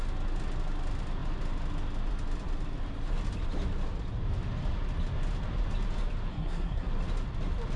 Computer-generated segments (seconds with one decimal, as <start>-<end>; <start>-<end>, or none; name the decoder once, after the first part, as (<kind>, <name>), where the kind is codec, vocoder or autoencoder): 6.3-6.9 (codec, SNAC)